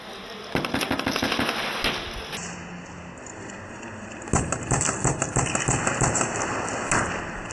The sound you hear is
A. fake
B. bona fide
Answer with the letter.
B